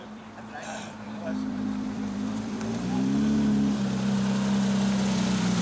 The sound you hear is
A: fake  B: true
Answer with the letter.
A